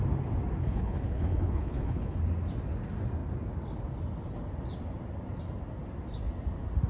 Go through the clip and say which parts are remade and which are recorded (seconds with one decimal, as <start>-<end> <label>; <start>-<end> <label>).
0.0-0.6 recorded; 0.6-2.2 remade; 2.2-6.9 recorded